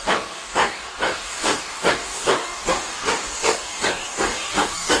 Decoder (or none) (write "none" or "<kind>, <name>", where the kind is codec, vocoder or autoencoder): codec, DAC